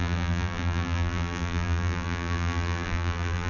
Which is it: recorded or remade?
remade